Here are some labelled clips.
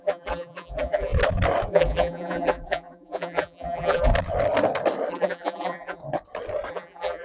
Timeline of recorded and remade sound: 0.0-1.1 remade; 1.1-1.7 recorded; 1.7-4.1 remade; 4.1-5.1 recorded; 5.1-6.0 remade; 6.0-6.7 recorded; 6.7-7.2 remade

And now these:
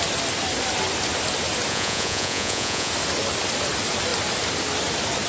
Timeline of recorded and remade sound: 0.0-1.7 recorded; 1.7-2.9 remade; 2.9-5.3 recorded

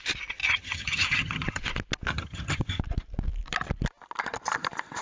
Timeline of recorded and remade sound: 0.0-0.4 recorded; 0.4-1.6 remade; 1.6-2.1 recorded; 2.1-2.8 remade; 2.8-5.0 recorded

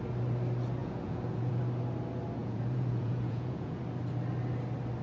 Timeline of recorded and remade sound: 0.0-0.8 recorded; 0.8-1.6 remade; 1.6-2.4 recorded; 2.4-3.8 remade; 3.8-5.0 recorded

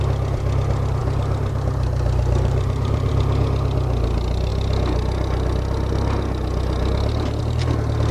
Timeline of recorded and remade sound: 0.0-1.0 recorded; 1.0-3.1 remade; 3.1-8.1 recorded

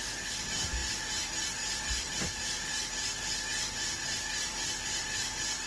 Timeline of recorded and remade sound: 0.0-5.7 recorded